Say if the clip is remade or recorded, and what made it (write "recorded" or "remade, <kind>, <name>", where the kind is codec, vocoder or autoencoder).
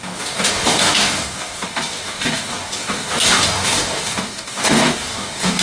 remade, codec, DAC